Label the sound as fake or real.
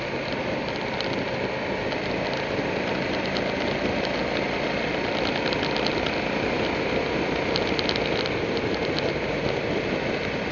real